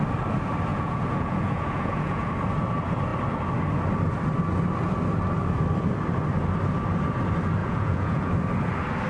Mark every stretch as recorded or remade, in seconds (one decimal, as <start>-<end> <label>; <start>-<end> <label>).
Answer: 0.0-0.7 recorded; 0.7-2.3 remade; 2.3-7.6 recorded; 7.6-8.3 remade; 8.3-9.1 recorded